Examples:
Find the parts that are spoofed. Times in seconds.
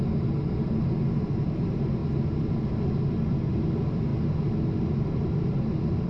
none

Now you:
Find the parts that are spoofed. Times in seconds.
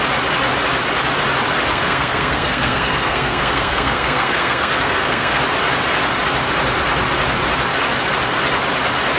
1.7-5.4 (codec, SNAC)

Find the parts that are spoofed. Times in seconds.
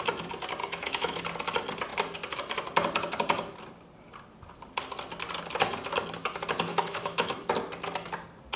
0.6-1.2 (autoencoder, DAC-VAE); 6.7-7.5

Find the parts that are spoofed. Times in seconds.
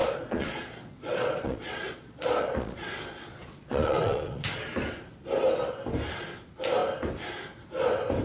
0.0-4.6 (vocoder, Vocos)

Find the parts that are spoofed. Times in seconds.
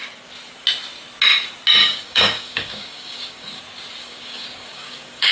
1.8-3.6 (codec, DAC); 4.0-5.3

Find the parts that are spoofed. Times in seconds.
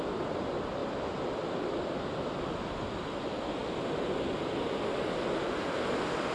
0.8-2.1 (vocoder, BigVGAN v2)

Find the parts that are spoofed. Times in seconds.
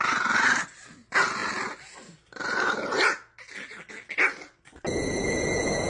none